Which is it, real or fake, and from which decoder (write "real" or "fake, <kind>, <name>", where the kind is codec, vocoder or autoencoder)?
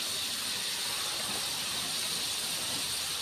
real